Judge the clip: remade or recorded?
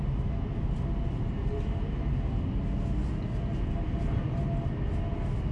recorded